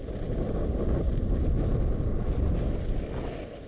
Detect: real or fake real